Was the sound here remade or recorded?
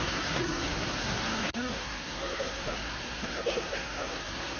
remade